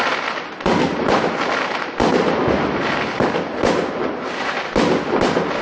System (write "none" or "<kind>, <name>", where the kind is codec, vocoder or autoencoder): none